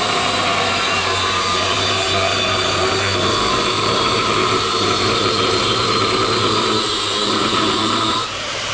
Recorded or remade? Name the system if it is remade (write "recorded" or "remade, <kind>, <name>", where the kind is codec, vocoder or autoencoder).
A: remade, vocoder, BigVGAN v2